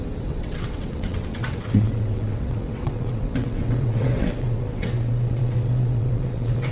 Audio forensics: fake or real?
fake